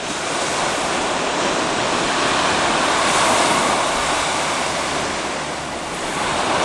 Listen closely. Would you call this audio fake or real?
real